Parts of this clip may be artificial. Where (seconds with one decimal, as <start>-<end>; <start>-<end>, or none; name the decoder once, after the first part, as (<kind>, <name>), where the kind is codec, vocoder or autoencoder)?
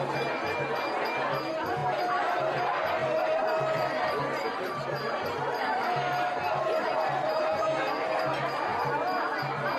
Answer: 1.8-2.6 (vocoder, BigVGAN v2); 3.0-6.9; 8.7-9.8